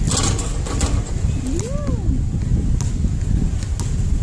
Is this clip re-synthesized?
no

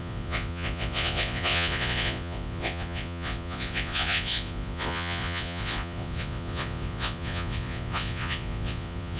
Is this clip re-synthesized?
yes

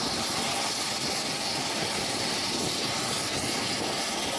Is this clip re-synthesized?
no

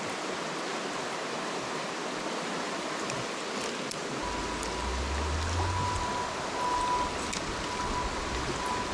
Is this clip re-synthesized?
no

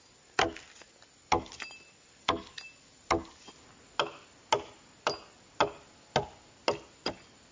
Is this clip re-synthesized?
no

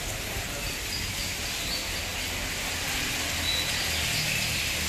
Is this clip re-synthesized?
no